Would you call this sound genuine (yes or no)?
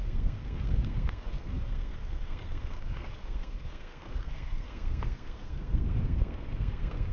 no